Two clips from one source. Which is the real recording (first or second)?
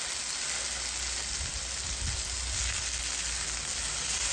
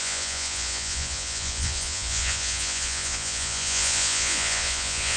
first